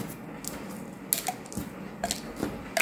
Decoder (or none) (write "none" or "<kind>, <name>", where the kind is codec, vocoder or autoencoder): none